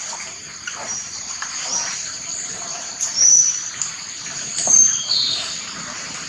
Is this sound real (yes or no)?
no